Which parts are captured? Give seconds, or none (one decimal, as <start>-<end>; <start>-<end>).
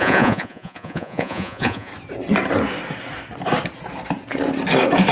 1.9-5.1